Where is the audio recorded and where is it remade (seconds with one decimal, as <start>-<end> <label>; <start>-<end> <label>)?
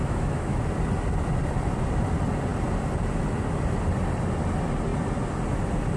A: 0.0-0.6 remade; 0.6-6.0 recorded